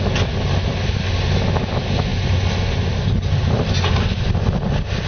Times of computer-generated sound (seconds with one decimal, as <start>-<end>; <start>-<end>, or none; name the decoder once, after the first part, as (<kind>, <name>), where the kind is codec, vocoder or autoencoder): none